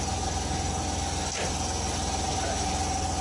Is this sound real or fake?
real